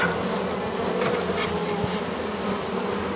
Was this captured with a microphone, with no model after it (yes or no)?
yes